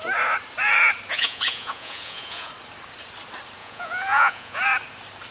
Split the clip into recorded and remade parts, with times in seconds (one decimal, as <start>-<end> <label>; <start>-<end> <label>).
0.0-1.1 recorded; 1.1-2.5 remade; 2.5-3.6 recorded; 3.6-4.6 remade; 4.6-5.3 recorded